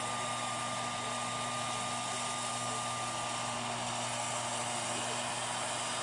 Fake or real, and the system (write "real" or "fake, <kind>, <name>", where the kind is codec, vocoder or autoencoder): real